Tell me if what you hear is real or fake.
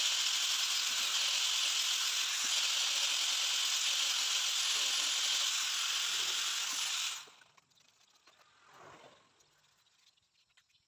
real